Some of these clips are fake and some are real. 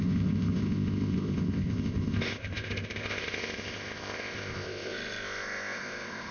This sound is fake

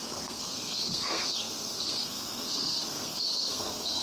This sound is fake